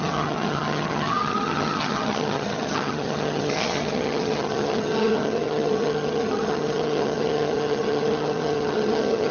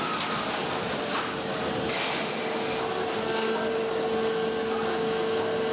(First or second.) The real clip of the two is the second